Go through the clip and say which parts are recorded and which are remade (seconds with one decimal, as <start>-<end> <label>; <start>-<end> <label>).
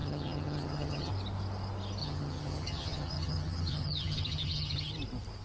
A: 0.0-1.1 remade; 1.1-2.0 recorded; 2.0-4.9 remade; 4.9-5.4 recorded